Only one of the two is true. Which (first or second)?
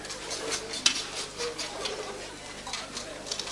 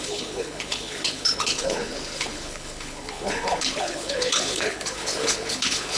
first